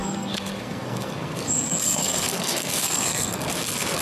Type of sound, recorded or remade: remade